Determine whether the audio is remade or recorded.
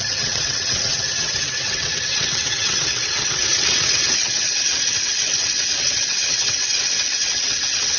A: remade